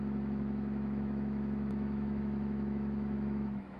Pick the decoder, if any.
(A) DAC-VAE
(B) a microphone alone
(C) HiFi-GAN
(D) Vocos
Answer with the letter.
A